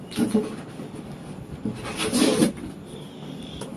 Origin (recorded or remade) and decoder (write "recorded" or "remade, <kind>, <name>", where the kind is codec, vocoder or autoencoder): recorded